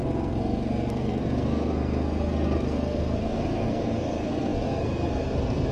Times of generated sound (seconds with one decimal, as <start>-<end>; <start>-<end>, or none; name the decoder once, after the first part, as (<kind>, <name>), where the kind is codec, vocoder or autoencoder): 0.0-5.7 (codec, SNAC)